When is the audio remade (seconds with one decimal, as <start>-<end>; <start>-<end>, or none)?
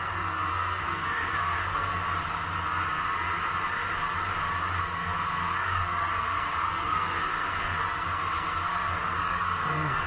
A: 0.0-2.0; 4.8-10.1